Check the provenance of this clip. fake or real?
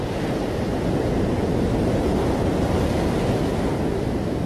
real